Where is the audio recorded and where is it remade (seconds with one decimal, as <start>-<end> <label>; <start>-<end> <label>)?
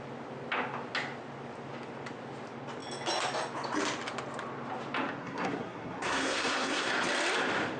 0.0-5.2 recorded; 5.2-6.9 remade; 6.9-7.8 recorded